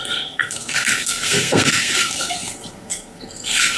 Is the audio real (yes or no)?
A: no